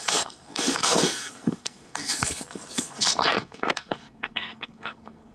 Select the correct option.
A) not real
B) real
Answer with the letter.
A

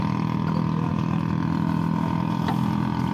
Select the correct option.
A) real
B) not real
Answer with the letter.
A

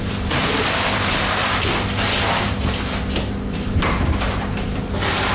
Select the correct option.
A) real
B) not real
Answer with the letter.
A